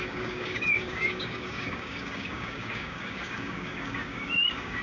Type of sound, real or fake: fake